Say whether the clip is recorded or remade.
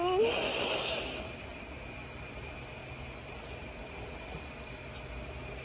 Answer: recorded